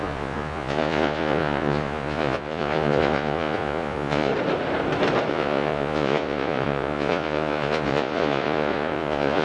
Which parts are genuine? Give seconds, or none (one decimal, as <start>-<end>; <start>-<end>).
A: 4.3-5.3